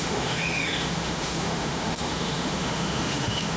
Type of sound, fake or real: fake